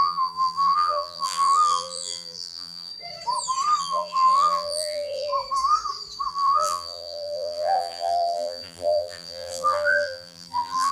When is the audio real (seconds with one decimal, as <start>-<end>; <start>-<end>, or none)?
2.9-3.8; 5.3-6.3